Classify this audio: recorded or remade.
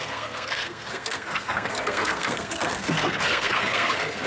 remade